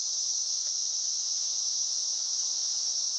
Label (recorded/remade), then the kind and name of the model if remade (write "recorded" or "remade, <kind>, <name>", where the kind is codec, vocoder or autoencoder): remade, autoencoder, DAC-VAE